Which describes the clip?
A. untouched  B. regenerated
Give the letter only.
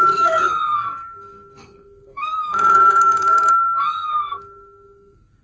B